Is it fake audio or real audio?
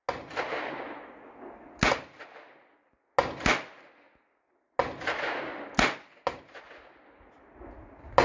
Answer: real